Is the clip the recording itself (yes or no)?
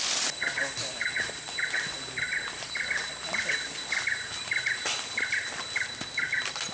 yes